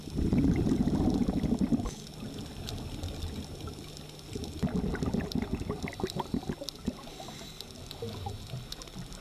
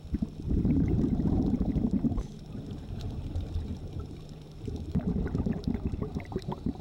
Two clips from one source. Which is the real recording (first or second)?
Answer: first